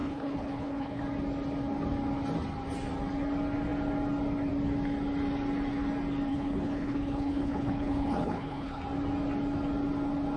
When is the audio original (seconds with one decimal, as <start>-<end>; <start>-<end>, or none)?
1.0-6.3; 8.8-10.4